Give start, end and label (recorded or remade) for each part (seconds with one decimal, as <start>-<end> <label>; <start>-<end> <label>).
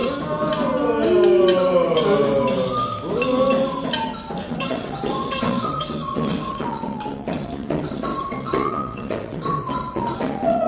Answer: 0.0-4.4 recorded; 4.4-10.7 remade